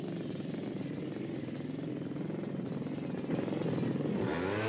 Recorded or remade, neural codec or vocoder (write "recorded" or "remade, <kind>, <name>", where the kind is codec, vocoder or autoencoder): recorded